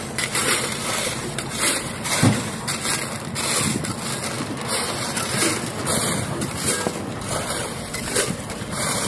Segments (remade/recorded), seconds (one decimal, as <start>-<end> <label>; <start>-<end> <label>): 0.0-2.7 remade; 2.7-5.0 recorded; 5.0-5.8 remade; 5.8-7.6 recorded; 7.6-9.1 remade